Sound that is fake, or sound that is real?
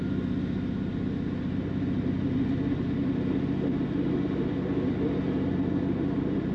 real